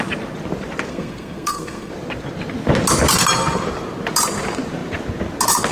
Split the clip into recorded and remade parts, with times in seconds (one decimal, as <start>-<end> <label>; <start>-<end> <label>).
0.0-0.9 recorded; 0.9-1.9 remade; 1.9-5.7 recorded